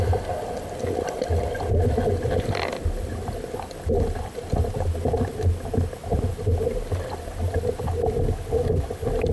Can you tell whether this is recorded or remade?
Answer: recorded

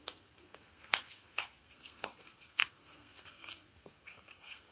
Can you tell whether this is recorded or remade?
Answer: remade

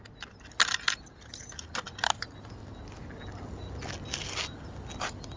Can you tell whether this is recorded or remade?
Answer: recorded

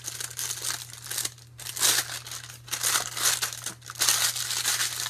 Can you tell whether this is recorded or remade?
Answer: recorded